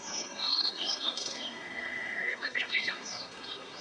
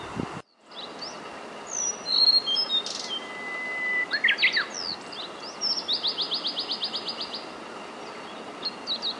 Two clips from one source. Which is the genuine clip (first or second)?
second